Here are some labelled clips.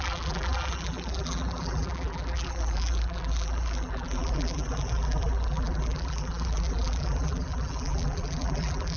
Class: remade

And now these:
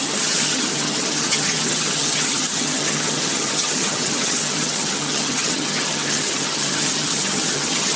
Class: remade